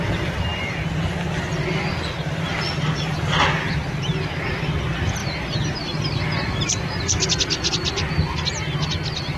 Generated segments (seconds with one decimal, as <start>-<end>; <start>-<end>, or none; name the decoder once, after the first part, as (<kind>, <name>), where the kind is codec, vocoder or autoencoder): 0.5-3.6 (vocoder, BigVGAN v2)